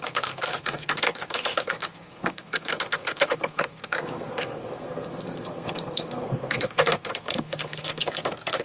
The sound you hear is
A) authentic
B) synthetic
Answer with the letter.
B